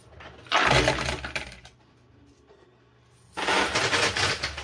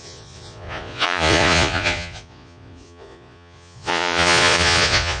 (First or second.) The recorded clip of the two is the first